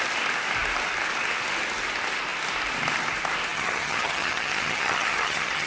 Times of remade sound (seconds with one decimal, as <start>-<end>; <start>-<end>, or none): 3.5-5.7